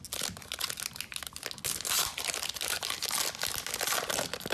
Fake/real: real